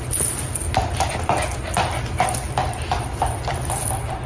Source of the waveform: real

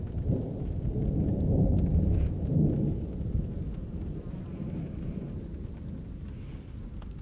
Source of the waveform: real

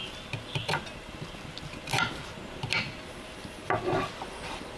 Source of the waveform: real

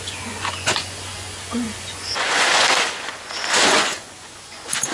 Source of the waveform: fake